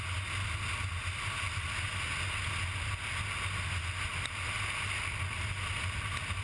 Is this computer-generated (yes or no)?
no